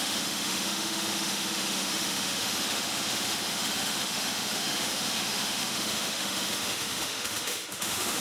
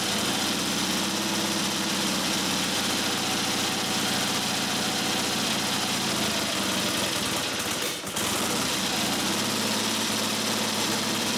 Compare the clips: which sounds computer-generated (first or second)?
first